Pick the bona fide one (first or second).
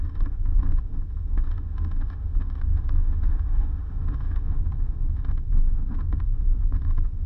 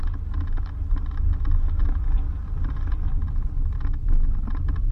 second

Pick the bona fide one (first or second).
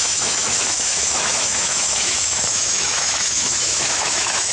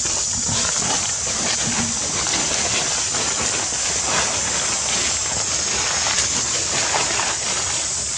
second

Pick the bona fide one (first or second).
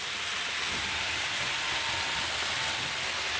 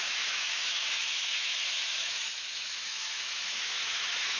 first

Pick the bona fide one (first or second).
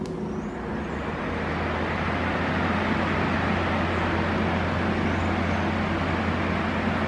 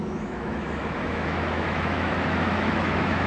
first